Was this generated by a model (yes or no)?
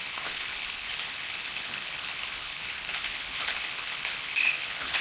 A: yes